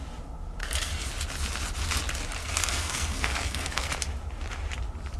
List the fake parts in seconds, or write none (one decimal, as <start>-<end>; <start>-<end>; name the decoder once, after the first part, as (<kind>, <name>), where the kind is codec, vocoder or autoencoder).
0.6-1.1 (codec, SNAC); 2.4-3.9